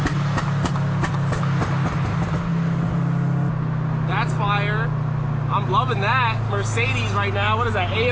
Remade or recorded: recorded